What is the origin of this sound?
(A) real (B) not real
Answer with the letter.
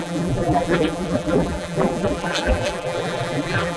B